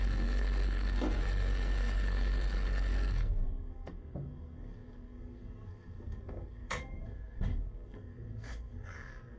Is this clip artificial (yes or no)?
yes